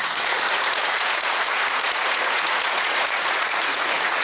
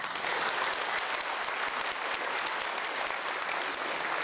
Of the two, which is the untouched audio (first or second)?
second